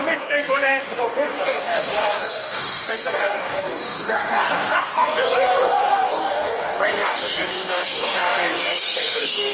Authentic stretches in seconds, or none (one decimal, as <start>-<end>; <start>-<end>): none